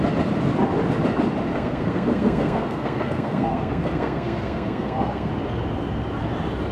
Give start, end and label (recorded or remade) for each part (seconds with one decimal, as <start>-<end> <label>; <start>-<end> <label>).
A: 0.0-1.5 recorded; 1.5-5.3 remade; 5.3-6.7 recorded